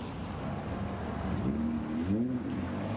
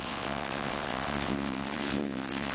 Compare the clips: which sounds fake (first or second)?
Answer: second